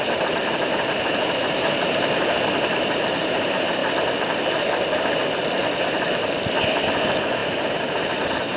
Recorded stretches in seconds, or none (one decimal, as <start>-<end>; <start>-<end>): 3.8-6.9